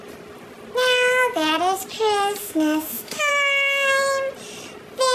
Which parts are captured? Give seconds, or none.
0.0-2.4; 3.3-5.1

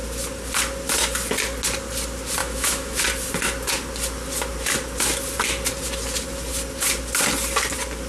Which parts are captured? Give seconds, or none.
0.0-2.4; 3.0-8.1

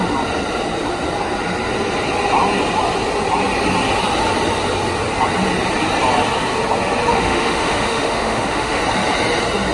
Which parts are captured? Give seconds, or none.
0.0-7.1; 8.8-9.7

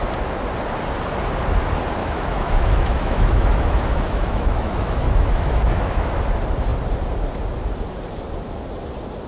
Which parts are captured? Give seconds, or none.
0.0-2.0; 6.2-9.3